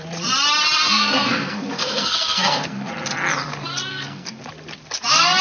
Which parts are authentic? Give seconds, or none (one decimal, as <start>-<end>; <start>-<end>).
0.0-0.8; 2.9-3.9; 4.4-5.4